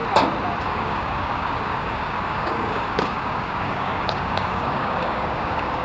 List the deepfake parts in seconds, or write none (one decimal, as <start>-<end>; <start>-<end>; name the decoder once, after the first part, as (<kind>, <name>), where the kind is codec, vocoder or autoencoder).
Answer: 0.6-5.8 (codec, DAC)